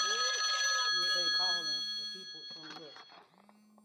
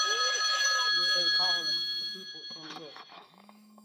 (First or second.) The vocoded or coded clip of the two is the second